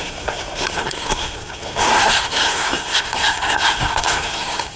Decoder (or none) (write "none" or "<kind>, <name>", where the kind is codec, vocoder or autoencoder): codec, SNAC